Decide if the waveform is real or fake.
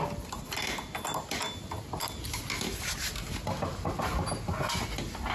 real